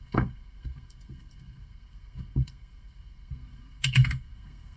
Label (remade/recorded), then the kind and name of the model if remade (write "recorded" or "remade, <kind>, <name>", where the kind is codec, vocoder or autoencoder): remade, codec, SNAC